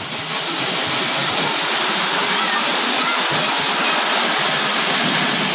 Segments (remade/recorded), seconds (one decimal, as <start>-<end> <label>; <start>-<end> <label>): 0.0-5.5 recorded